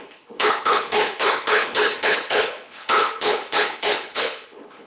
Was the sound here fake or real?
fake